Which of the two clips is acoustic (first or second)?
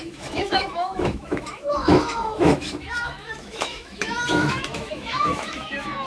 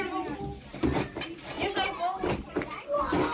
second